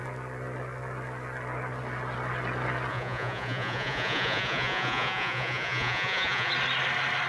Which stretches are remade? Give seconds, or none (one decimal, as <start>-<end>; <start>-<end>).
2.9-6.5